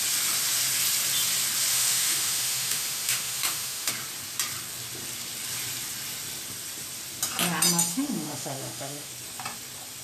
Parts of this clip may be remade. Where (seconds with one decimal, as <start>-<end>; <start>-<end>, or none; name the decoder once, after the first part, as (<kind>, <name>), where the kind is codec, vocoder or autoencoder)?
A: 1.7-3.9 (autoencoder, DAC-VAE); 7.9-9.1